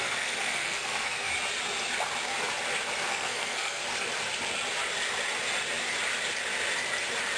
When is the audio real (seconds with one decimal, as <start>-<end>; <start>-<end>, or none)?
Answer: 1.3-3.1; 3.8-7.4